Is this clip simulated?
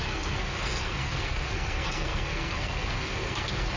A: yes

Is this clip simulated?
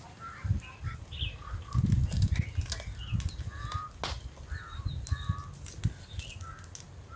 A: no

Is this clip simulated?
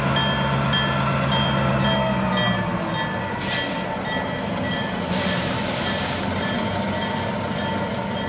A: no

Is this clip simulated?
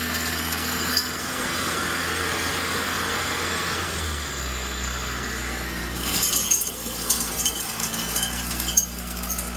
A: yes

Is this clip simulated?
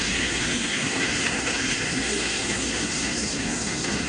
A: yes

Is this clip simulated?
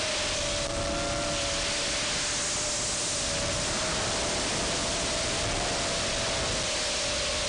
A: no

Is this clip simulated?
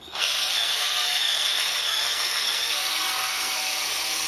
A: yes